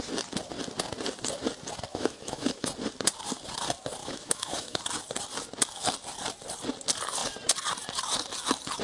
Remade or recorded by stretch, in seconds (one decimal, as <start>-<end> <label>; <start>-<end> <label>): 0.0-1.9 recorded; 1.9-2.7 remade; 2.7-4.0 recorded; 4.0-4.8 remade; 4.8-8.8 recorded